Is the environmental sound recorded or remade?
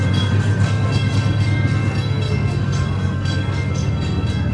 remade